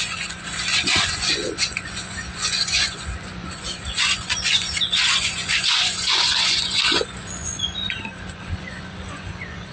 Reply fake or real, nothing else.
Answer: fake